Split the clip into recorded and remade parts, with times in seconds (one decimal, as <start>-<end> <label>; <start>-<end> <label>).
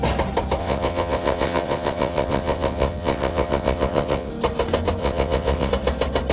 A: 0.0-0.6 recorded; 0.6-4.3 remade; 4.3-5.0 recorded; 5.0-5.7 remade; 5.7-6.3 recorded